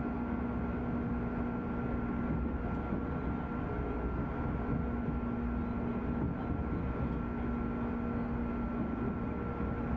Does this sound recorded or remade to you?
recorded